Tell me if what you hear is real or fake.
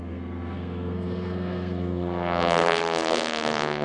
fake